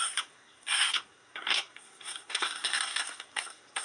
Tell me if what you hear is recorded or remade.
remade